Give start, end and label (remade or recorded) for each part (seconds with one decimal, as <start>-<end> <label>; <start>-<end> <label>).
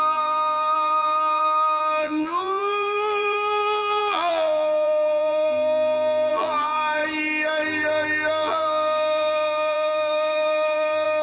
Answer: 0.0-7.0 remade; 7.0-8.3 recorded; 8.3-11.2 remade